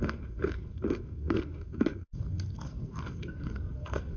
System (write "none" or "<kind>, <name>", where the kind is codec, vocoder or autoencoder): codec, SNAC